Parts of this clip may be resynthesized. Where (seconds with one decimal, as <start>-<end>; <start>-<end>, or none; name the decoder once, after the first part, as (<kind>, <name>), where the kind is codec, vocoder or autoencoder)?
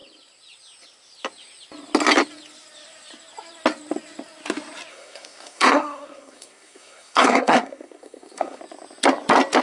4.9-8.6 (codec, SNAC)